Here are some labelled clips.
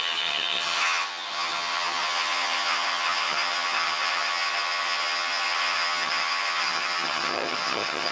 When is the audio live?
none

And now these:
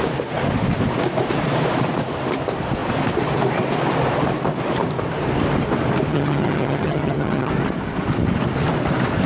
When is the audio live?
0.0-6.1; 7.5-9.3

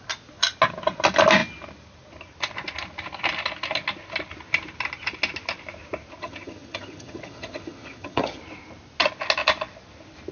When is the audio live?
0.0-6.2; 8.4-10.3

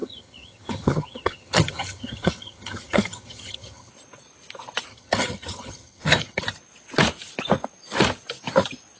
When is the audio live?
3.9-4.9; 6.4-9.0

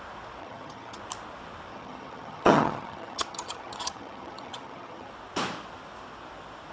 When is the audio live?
0.0-0.4; 1.0-1.7; 5.1-6.7